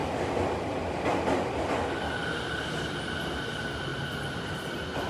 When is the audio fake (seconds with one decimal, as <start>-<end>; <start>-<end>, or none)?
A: none